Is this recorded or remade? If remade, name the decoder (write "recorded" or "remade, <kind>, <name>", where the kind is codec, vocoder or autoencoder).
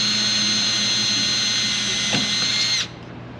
recorded